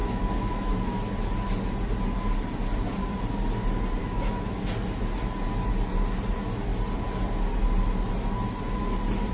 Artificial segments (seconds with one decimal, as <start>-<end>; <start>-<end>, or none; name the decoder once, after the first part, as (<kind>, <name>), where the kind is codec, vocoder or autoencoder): 0.0-0.7 (autoencoder, DAC-VAE); 4.0-4.6